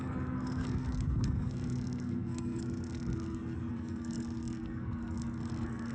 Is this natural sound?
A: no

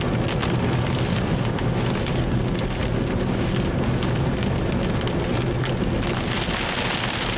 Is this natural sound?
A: yes